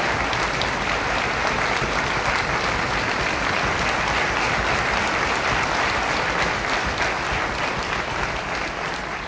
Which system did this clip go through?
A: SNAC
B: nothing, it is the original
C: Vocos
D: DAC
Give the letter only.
B